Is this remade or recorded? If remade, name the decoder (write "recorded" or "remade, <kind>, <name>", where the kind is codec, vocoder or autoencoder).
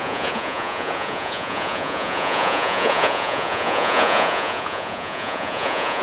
remade, vocoder, Vocos